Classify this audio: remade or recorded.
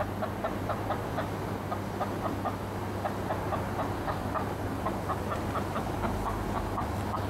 recorded